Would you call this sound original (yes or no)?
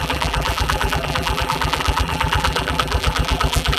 no